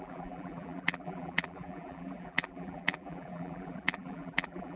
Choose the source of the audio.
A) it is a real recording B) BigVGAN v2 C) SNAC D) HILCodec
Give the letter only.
B